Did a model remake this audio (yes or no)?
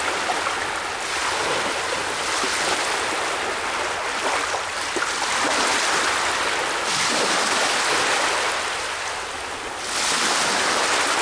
no